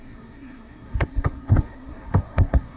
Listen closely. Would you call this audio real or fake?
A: fake